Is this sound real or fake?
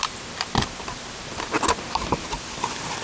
real